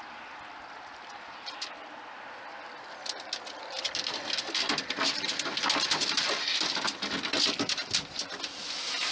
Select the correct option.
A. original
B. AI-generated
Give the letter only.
A